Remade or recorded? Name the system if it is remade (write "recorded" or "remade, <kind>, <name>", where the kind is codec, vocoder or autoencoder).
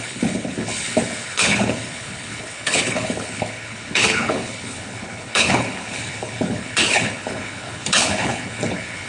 remade, codec, HILCodec